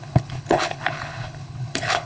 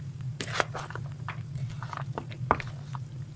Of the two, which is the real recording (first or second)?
second